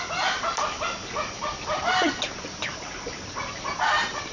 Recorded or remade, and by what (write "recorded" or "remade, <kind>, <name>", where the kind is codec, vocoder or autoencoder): recorded